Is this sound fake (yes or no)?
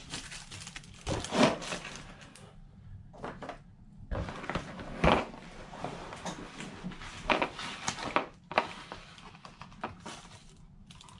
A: no